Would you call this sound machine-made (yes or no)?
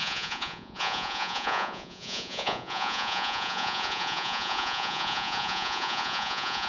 yes